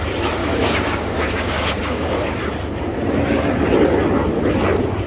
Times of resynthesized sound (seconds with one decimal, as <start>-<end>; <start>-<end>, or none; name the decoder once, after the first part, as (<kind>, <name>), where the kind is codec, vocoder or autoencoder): 0.4-2.1 (codec, DAC)